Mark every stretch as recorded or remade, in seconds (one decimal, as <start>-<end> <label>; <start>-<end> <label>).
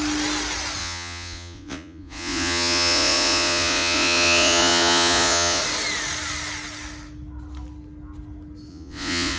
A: 0.0-0.8 recorded; 0.8-5.6 remade; 5.6-8.7 recorded; 8.7-9.4 remade